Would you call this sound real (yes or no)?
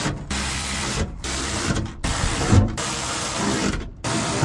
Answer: no